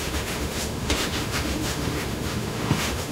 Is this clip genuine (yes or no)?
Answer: no